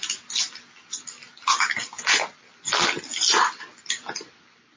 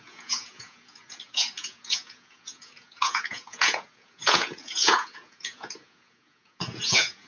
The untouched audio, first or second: first